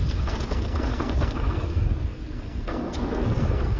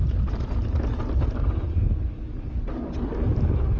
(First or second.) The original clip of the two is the second